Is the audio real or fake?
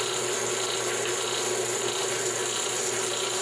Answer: real